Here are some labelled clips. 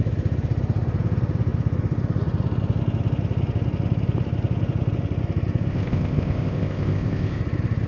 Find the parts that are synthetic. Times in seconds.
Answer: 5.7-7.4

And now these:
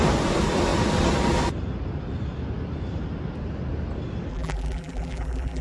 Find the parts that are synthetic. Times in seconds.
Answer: 4.3-5.6

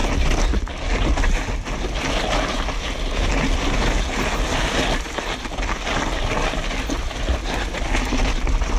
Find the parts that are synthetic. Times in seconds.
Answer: none

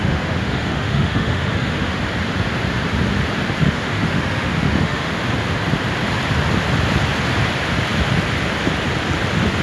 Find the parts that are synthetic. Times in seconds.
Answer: 0.0-2.0; 3.6-5.1

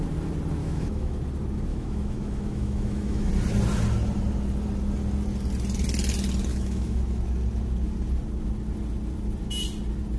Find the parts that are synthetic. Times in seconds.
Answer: 0.6-1.2; 1.7-3.3; 6.5-7.0